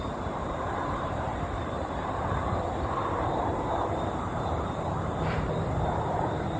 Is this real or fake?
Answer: fake